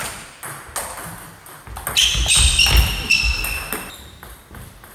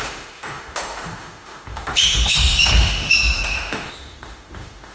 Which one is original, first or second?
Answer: first